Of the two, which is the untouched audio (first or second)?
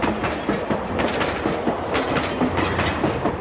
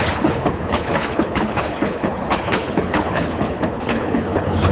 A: first